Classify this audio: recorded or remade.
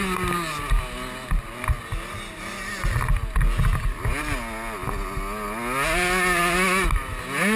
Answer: recorded